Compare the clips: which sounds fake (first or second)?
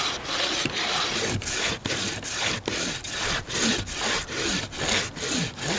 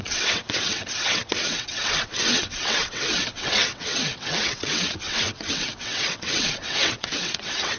second